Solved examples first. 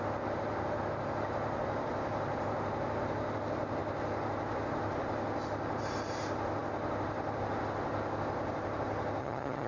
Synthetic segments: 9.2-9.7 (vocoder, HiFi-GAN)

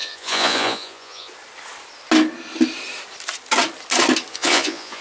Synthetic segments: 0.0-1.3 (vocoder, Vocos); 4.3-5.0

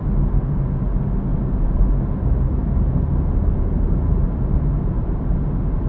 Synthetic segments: none

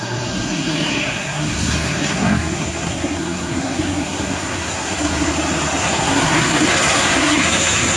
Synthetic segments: 0.0-5.3 (codec, SNAC); 5.8-8.0

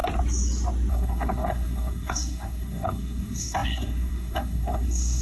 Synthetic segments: 0.9-5.2 (codec, SNAC)

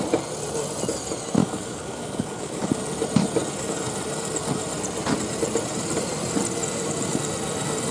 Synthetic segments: 1.4-2.7 (codec, DAC)

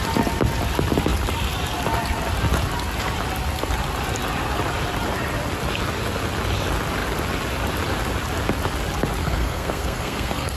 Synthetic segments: 9.2-10.6 (codec, SNAC)

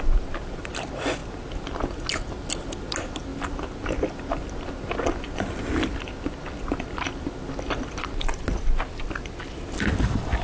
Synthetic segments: none